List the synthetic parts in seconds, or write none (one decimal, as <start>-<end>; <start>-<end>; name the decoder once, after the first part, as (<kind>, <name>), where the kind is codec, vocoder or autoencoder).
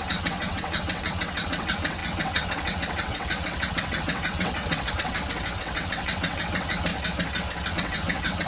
0.0-6.9 (vocoder, WaveNeXt); 7.7-8.5